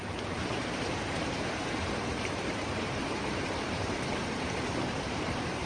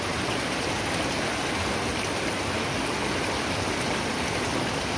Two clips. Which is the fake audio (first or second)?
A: first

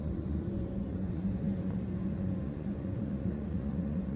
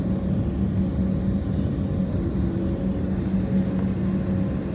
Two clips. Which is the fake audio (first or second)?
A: first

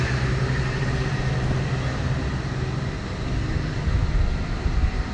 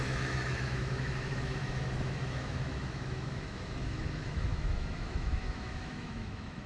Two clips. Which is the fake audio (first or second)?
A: second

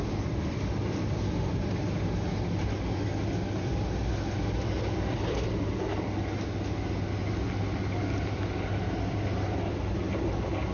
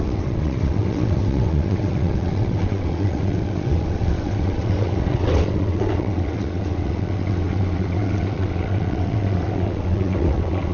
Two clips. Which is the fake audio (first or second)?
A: second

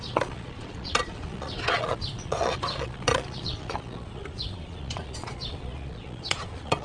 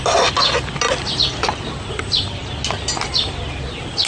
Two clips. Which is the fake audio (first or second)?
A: first